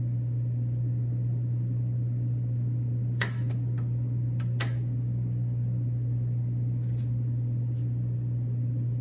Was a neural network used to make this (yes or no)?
no